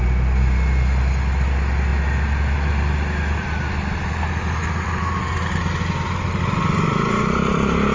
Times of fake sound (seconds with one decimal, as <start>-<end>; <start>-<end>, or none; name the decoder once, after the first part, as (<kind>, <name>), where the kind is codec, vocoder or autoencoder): none